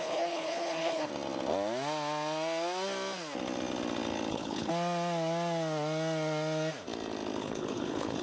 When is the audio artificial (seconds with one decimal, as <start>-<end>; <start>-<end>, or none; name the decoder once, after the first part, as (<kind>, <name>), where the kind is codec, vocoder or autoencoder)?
0.0-1.1 (codec, HILCodec); 4.3-4.7; 7.4-8.2